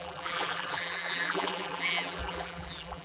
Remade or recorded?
remade